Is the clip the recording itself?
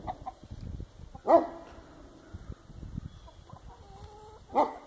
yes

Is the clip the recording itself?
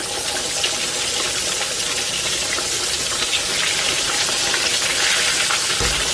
yes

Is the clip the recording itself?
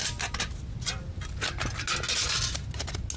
yes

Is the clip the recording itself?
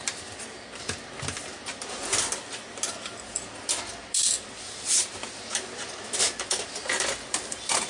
yes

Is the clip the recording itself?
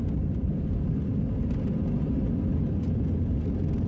yes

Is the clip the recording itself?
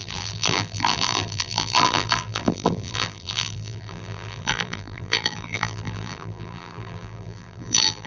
no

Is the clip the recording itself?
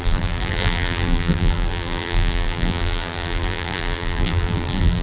no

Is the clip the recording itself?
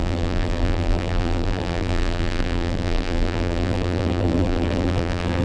no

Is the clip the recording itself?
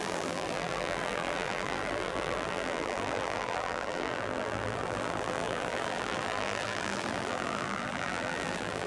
no